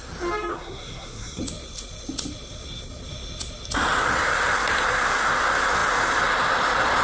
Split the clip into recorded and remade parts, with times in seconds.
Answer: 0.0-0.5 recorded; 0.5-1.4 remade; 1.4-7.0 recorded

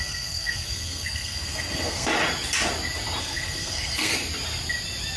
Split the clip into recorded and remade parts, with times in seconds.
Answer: 0.0-2.1 remade; 2.1-3.2 recorded; 3.2-4.1 remade; 4.1-5.2 recorded

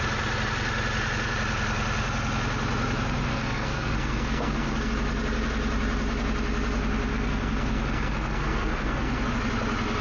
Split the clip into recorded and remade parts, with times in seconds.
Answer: 0.0-3.3 recorded; 3.3-4.9 remade; 4.9-7.1 recorded; 7.1-9.3 remade; 9.3-10.0 recorded

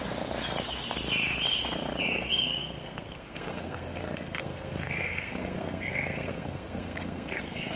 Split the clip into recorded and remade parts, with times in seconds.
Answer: 0.0-2.0 recorded; 2.0-7.8 remade

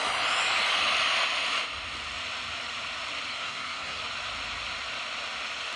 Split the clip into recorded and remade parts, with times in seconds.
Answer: 0.0-3.3 recorded; 3.3-4.0 remade; 4.0-5.8 recorded

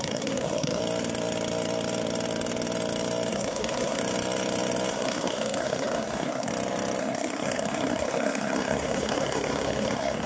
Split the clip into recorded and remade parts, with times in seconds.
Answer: 0.0-0.8 remade; 0.8-3.3 recorded; 3.3-4.0 remade; 4.0-4.9 recorded; 4.9-6.5 remade; 6.5-7.0 recorded; 7.0-10.3 remade

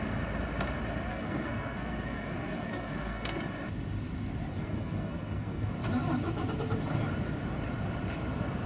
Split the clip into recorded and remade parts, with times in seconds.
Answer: 0.0-1.1 recorded; 1.1-3.4 remade; 3.4-4.5 recorded; 4.5-5.7 remade; 5.7-8.7 recorded

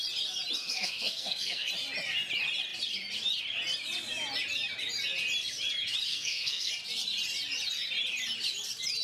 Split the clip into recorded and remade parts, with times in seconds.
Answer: 0.0-0.6 recorded; 0.6-1.7 remade; 1.7-6.1 recorded; 6.1-6.7 remade; 6.7-9.0 recorded